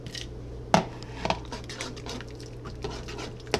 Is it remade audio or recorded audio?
recorded